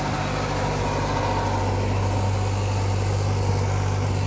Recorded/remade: recorded